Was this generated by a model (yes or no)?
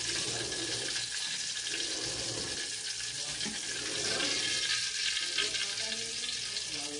no